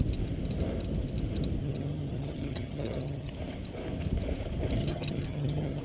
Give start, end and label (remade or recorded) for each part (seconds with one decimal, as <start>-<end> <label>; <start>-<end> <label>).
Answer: 0.0-1.6 recorded; 1.6-3.3 remade; 3.3-4.8 recorded; 4.8-5.8 remade